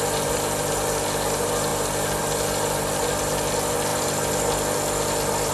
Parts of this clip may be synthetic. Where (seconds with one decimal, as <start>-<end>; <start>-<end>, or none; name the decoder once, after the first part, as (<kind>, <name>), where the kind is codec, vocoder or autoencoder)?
none